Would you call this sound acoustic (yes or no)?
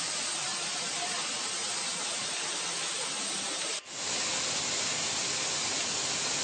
yes